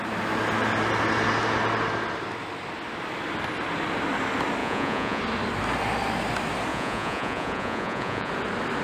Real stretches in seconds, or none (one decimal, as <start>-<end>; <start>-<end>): 0.0-4.6; 5.2-6.7; 8.3-8.8